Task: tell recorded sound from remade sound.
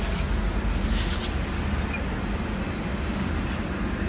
recorded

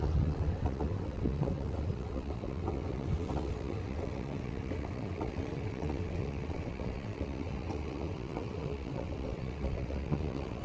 remade